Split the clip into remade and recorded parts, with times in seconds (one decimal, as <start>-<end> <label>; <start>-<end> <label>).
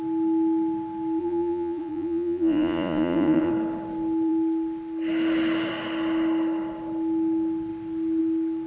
0.0-1.2 recorded; 1.2-3.5 remade; 3.5-8.7 recorded